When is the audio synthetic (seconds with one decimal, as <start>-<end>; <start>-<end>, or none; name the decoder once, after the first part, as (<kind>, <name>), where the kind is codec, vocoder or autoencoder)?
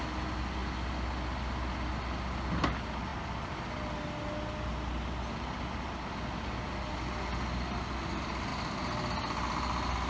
none